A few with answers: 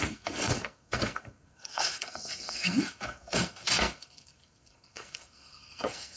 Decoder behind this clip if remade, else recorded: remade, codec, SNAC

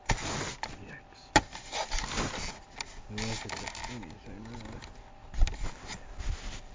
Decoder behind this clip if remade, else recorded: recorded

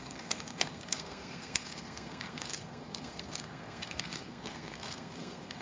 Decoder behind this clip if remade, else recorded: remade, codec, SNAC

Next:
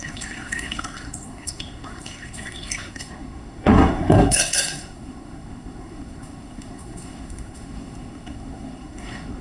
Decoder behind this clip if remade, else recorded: remade, codec, SNAC